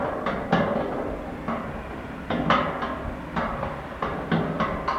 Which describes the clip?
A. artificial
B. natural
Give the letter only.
B